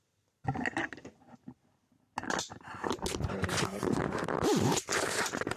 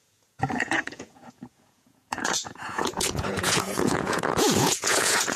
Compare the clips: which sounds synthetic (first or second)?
second